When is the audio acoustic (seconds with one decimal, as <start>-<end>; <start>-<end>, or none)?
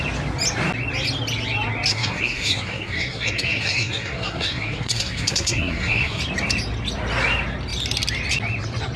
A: 0.0-1.9; 6.2-9.0